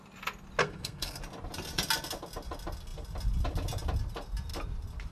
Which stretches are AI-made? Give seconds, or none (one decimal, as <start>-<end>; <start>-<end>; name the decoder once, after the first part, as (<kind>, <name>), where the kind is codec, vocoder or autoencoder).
0.6-1.2 (codec, SNAC)